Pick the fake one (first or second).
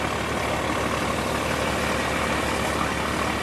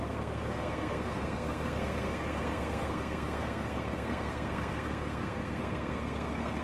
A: second